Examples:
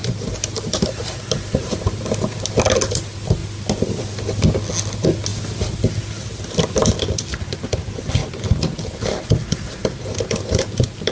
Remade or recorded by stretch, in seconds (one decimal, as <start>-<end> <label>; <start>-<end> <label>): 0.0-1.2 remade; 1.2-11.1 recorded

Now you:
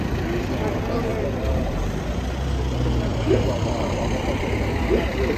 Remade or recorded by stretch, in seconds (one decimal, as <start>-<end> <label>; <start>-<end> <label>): 0.0-1.1 recorded; 1.1-2.0 remade; 2.0-3.1 recorded; 3.1-5.4 remade

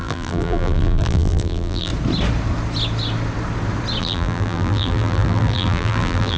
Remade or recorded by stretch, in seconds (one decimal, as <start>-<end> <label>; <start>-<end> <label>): 0.0-1.9 remade; 1.9-4.0 recorded; 4.0-6.4 remade

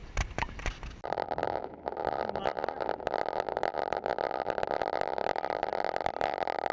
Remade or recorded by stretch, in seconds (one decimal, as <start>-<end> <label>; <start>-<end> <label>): 0.0-6.7 recorded

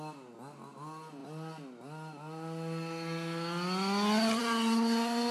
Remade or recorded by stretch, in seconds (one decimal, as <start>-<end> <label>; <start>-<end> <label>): 0.0-5.3 recorded